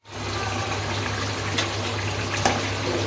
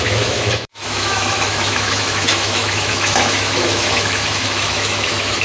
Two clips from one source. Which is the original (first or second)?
first